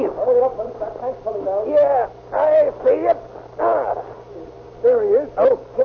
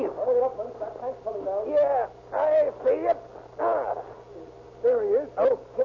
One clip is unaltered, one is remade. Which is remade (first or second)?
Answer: first